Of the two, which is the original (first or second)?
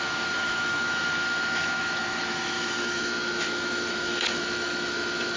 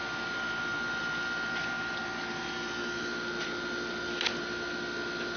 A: second